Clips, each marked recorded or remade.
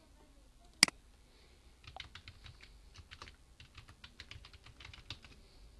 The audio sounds recorded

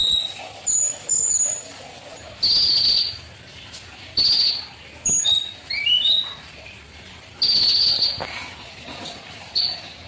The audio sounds recorded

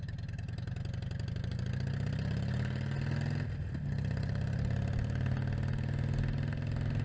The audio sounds recorded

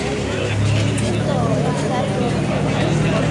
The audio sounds recorded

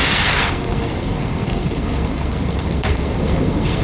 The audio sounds remade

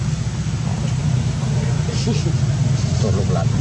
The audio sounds recorded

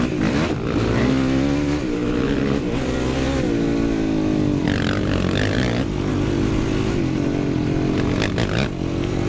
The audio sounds recorded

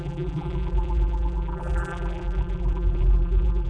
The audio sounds remade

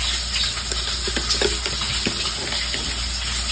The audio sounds recorded